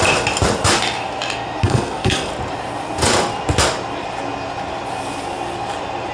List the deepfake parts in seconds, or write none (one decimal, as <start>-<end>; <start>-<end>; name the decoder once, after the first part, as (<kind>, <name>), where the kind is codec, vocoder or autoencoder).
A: 1.6-2.3 (codec, SNAC)

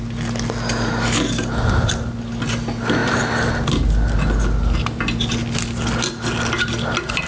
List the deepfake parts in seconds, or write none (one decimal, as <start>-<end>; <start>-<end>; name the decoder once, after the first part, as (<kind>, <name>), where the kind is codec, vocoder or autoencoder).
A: none